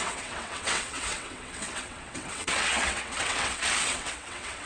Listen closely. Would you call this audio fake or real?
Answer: fake